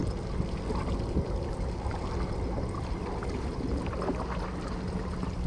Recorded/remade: recorded